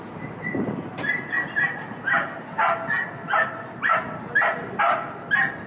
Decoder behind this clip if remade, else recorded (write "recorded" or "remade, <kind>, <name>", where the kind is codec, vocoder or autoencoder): recorded